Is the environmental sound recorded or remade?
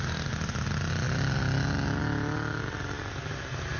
recorded